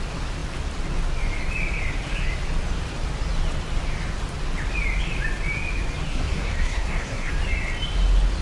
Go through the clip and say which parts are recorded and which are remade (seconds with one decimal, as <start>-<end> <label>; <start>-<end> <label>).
0.0-6.1 recorded; 6.1-7.3 remade; 7.3-8.4 recorded